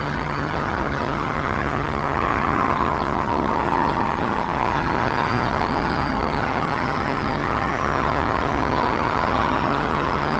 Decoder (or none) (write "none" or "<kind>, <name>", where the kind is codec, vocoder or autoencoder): vocoder, HiFi-GAN